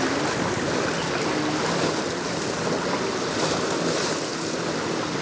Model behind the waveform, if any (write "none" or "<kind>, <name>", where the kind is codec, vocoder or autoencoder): none